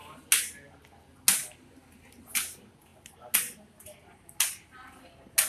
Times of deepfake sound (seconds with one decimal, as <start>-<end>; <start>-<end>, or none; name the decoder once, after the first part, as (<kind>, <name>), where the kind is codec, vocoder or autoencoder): none